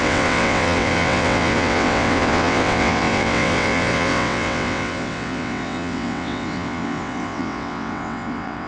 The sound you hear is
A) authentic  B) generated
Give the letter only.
B